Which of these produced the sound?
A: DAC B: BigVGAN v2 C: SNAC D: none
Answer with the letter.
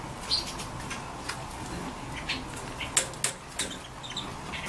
D